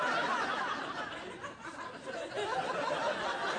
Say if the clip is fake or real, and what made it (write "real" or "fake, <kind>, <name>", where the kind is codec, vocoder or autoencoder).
real